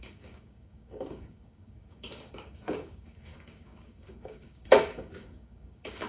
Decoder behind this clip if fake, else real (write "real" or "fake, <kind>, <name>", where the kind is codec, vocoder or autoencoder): fake, codec, DAC